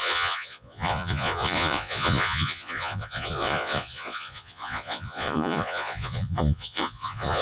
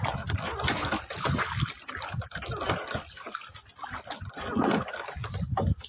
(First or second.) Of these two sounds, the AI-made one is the first